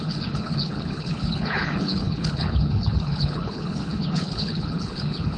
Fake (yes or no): yes